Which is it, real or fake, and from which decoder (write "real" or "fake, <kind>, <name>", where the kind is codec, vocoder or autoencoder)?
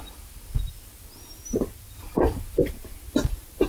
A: real